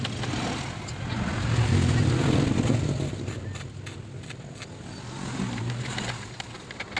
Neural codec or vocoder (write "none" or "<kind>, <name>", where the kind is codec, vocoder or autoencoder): none